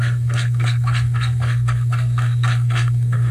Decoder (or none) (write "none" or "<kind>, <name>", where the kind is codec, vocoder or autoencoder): codec, SNAC